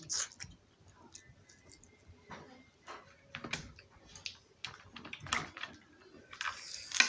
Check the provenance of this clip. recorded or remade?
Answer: recorded